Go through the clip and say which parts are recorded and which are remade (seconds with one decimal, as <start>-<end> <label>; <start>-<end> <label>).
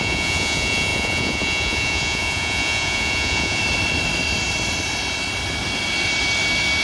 0.0-3.6 remade; 3.6-6.8 recorded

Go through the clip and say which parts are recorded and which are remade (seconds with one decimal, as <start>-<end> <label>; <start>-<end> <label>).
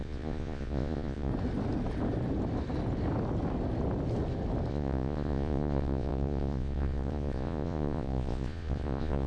0.0-1.3 remade; 1.3-4.7 recorded; 4.7-9.3 remade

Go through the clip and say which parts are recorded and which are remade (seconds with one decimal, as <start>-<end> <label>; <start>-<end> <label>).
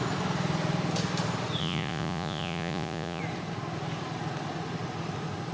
0.0-1.6 recorded; 1.6-3.2 remade; 3.2-5.5 recorded